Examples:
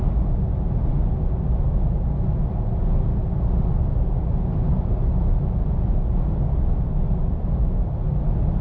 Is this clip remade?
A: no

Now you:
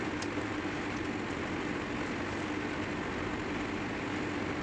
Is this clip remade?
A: no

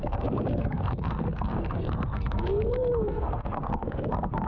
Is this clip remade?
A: yes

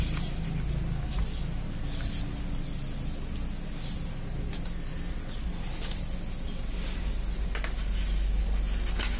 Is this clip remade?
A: no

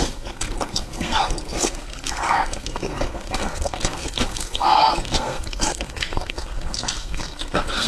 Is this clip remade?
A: yes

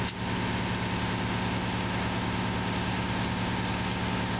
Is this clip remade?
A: no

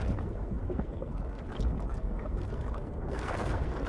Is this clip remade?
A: yes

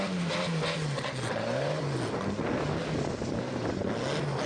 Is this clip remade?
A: no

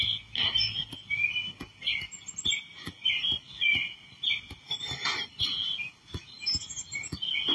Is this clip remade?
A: no